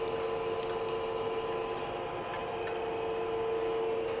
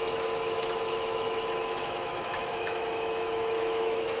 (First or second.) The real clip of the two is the first